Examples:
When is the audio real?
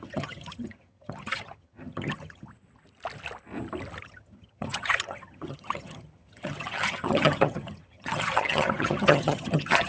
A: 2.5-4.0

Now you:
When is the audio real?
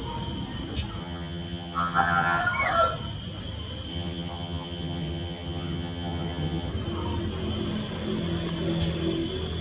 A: 0.0-1.0; 2.4-3.9; 6.7-9.6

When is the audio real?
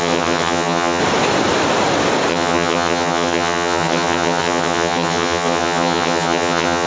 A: 1.0-2.3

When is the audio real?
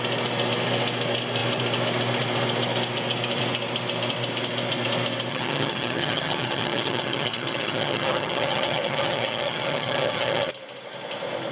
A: 0.0-5.3; 10.5-11.5